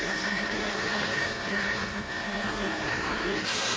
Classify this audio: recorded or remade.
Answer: remade